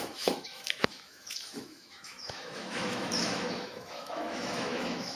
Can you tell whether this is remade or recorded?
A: remade